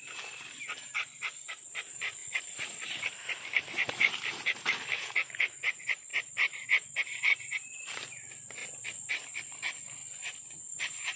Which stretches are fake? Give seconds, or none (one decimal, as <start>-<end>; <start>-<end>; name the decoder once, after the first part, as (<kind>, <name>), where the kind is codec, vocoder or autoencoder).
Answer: 0.0-2.2 (vocoder, BigVGAN v2); 2.8-8.6; 9.1-10.0; 10.6-11.2